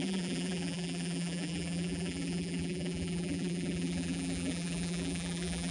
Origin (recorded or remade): remade